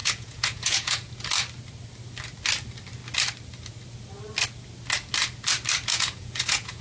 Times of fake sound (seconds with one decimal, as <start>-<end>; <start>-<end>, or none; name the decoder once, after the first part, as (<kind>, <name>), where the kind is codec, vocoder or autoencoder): 0.0-1.1 (vocoder, Vocos); 5.9-6.8